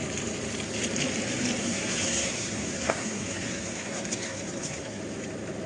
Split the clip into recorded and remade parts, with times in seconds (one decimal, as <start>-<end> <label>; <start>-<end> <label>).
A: 0.0-1.6 recorded; 1.6-5.0 remade; 5.0-5.7 recorded